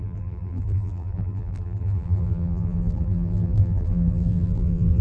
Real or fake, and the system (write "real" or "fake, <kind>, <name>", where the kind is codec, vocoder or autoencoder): fake, vocoder, BigVGAN v2